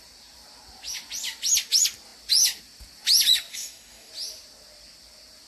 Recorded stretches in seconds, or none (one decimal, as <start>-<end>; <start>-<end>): 0.0-3.5; 4.1-5.5